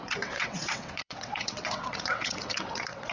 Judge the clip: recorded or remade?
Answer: remade